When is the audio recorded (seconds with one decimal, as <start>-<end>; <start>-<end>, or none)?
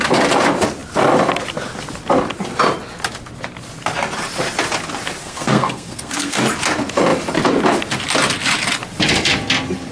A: 0.0-5.2; 6.4-9.9